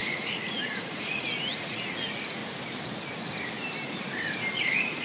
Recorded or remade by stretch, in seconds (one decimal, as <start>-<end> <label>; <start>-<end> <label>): 0.0-2.4 remade; 2.4-4.6 recorded; 4.6-5.0 remade